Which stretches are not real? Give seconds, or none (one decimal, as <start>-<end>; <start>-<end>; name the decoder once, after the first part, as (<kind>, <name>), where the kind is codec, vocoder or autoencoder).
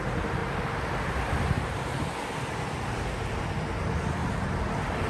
0.4-3.4 (vocoder, BigVGAN v2); 4.2-5.1